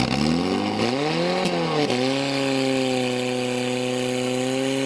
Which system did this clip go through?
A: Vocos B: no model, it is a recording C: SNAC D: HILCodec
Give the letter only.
B